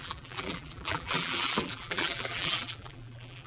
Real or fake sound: fake